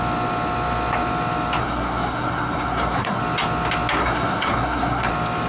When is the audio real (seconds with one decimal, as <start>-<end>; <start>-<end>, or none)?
0.0-1.6; 3.2-4.0; 5.1-5.5